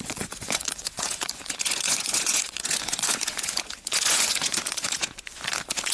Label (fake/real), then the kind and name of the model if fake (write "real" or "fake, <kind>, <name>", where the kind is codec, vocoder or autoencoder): fake, vocoder, Vocos